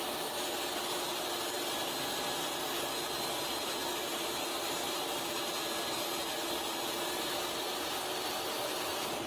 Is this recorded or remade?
recorded